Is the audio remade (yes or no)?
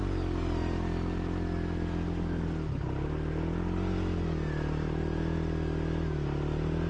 no